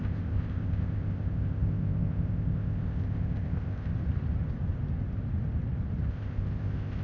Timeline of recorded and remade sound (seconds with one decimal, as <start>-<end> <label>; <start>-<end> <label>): 0.0-3.9 remade; 3.9-6.1 recorded; 6.1-7.0 remade